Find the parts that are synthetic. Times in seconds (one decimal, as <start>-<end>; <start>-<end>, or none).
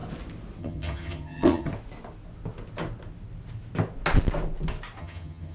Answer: 0.6-1.7; 5.0-5.5